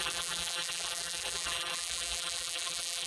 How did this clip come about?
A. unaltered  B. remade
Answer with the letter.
B